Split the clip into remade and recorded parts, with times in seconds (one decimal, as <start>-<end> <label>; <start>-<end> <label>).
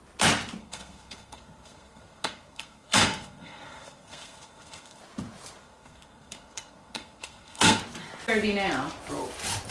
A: 0.0-0.6 recorded; 0.6-5.0 remade; 5.0-5.6 recorded; 5.6-7.8 remade; 7.8-9.7 recorded